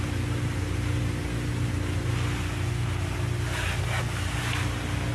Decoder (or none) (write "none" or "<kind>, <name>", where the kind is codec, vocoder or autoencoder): none